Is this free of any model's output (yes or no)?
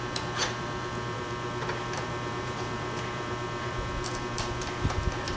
no